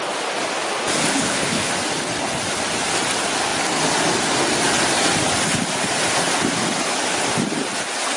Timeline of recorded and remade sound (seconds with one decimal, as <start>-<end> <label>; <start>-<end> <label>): 0.0-1.1 recorded; 1.1-1.7 remade; 1.7-8.2 recorded